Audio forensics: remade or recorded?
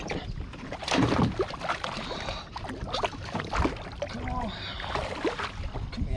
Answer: recorded